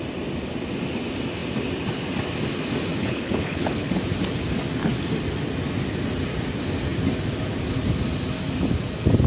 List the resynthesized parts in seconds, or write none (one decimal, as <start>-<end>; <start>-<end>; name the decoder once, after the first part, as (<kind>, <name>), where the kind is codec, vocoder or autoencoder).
3.0-3.9 (codec, HILCodec)